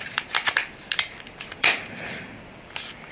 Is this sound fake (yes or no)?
yes